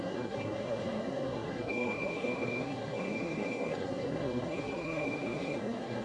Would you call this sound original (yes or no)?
no